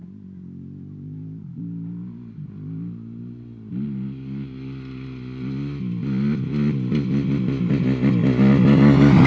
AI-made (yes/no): no